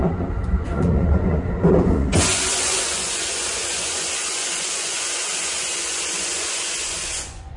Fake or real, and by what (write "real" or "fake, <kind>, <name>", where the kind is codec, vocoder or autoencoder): fake, vocoder, Vocos